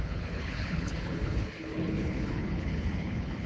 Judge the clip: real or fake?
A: fake